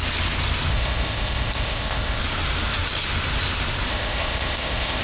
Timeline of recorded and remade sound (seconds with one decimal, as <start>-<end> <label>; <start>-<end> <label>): 0.0-0.7 recorded; 0.7-2.2 remade; 2.2-3.9 recorded; 3.9-5.0 remade